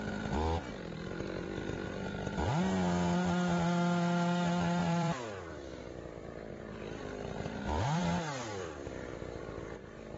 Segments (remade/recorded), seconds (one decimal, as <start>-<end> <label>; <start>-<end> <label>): 0.0-4.8 recorded; 4.8-5.8 remade; 5.8-7.0 recorded; 7.0-8.0 remade; 8.0-8.5 recorded; 8.5-9.4 remade; 9.4-10.2 recorded